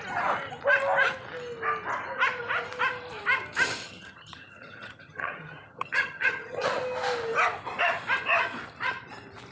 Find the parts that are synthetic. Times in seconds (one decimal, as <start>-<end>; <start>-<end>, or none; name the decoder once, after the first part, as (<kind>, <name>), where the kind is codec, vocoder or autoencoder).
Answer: 3.8-6.8 (vocoder, HiFi-GAN)